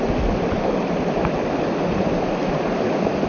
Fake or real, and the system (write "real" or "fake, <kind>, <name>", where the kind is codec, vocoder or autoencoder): real